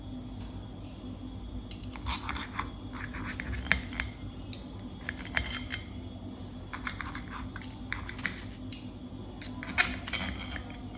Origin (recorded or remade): recorded